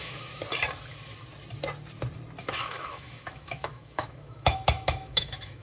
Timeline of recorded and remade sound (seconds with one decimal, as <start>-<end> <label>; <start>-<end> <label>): 0.0-0.4 remade; 0.4-2.4 recorded; 2.4-5.6 remade